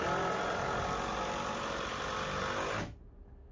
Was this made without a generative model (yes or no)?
yes